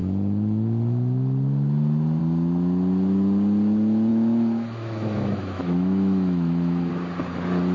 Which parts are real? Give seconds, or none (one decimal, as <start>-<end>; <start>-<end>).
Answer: 0.0-4.1; 6.9-7.7